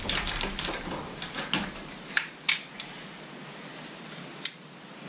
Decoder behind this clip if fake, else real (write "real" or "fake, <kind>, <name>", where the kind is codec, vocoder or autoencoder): real